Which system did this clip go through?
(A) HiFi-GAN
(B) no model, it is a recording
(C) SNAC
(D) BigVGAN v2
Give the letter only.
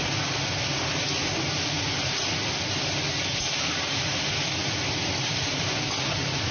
B